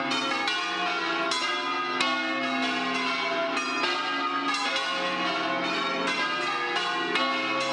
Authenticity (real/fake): real